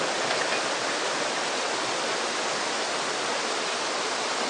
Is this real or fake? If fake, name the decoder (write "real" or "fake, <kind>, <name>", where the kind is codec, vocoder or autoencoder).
real